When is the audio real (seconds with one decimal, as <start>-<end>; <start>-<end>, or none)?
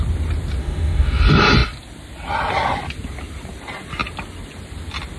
0.0-0.6; 1.2-5.2